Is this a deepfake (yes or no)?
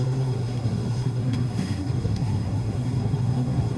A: yes